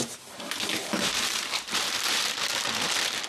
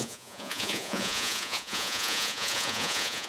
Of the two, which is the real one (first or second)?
first